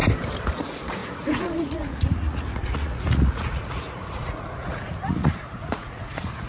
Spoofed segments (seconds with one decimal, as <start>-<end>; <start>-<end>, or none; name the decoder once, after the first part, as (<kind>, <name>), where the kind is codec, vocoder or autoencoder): 0.5-6.5 (vocoder, Vocos)